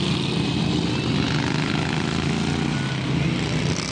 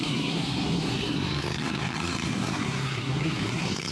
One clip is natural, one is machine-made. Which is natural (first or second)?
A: first